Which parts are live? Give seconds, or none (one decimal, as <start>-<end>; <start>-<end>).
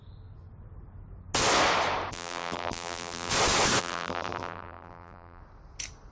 0.0-2.1; 3.3-3.8; 5.4-6.1